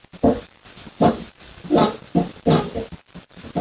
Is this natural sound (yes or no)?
no